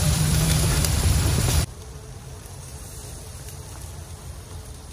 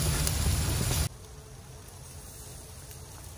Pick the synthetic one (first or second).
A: first